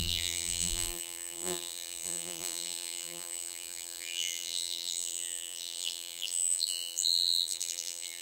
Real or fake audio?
fake